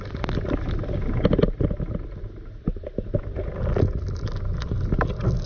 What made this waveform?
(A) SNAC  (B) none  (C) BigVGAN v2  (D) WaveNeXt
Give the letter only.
B